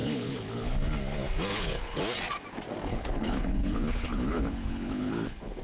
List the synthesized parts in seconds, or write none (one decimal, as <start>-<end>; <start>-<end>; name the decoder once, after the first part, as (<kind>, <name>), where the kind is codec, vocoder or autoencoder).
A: 0.0-0.7 (codec, HILCodec); 1.5-2.0; 2.9-5.6